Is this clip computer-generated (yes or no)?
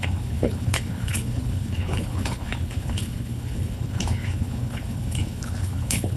yes